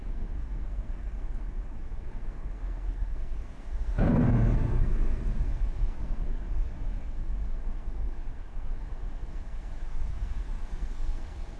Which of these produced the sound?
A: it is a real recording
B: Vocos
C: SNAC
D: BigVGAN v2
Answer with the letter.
C